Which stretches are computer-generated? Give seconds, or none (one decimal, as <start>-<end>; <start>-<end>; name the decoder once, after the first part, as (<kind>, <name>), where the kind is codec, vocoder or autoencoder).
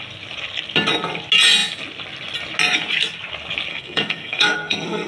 3.7-5.1 (codec, SNAC)